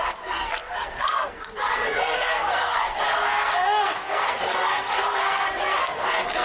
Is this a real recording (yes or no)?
no